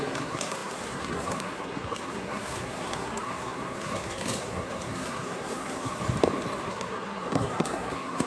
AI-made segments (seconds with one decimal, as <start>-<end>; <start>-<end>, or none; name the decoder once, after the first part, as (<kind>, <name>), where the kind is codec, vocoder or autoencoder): 0.0-6.0 (codec, SNAC); 6.7-8.3